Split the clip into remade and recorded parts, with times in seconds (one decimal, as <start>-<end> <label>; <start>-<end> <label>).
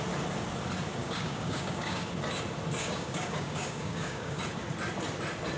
0.0-1.0 recorded; 1.0-2.1 remade; 2.1-2.8 recorded; 2.8-4.4 remade; 4.4-5.6 recorded